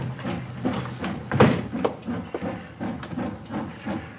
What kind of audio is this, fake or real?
fake